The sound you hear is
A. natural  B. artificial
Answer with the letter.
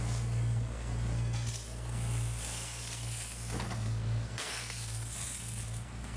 B